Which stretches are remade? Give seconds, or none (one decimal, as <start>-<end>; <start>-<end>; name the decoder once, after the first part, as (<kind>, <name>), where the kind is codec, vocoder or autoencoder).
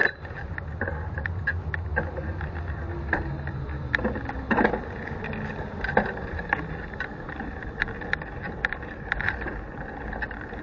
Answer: 0.0-4.4 (vocoder, BigVGAN v2)